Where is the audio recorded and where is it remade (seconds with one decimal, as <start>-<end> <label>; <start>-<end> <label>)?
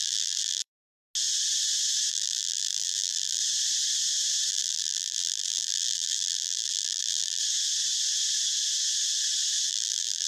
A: 0.0-0.7 remade; 0.7-2.1 recorded; 2.1-3.4 remade; 3.4-4.5 recorded; 4.5-7.4 remade; 7.4-9.7 recorded; 9.7-10.3 remade